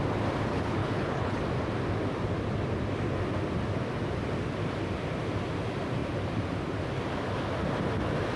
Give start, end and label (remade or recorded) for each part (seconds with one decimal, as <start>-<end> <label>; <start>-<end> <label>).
0.0-0.5 recorded; 0.5-1.4 remade; 1.4-8.4 recorded